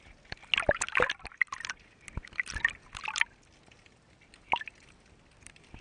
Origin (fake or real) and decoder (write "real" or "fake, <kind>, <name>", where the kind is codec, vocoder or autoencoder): real